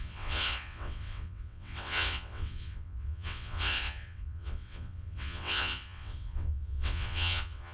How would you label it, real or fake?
fake